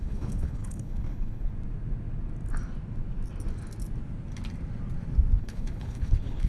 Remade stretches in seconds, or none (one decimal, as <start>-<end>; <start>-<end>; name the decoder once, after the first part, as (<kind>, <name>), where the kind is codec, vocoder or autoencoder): 0.0-1.5 (codec, HILCodec); 5.4-6.5